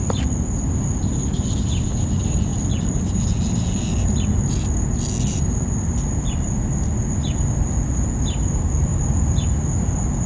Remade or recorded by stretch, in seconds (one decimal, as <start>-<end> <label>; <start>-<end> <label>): 0.0-10.3 recorded